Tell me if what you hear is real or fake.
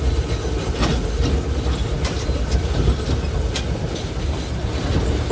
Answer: real